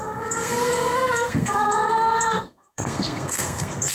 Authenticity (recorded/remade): remade